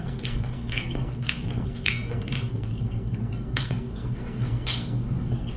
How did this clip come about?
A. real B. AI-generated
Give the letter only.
B